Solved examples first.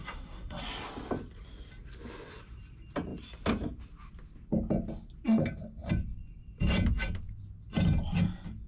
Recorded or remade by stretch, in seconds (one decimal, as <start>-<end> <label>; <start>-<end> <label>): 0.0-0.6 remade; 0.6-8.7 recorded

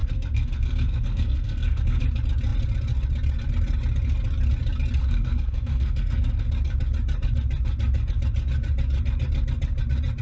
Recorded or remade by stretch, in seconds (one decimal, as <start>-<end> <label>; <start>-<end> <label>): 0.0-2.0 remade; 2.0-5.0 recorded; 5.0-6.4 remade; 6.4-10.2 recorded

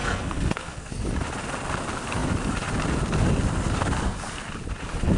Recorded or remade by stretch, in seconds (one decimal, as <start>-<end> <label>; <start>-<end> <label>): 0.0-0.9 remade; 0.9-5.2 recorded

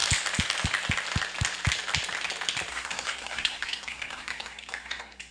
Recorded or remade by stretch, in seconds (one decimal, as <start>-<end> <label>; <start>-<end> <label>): 0.0-2.7 recorded; 2.7-5.3 remade